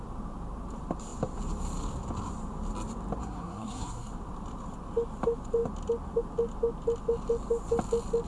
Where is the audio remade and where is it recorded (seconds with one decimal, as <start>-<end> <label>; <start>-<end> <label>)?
0.0-3.2 recorded; 3.2-4.1 remade; 4.1-8.3 recorded